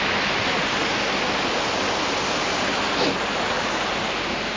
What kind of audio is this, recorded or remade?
recorded